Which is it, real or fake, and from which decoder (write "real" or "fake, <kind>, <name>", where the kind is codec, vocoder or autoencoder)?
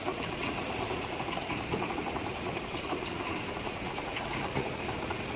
fake, vocoder, Vocos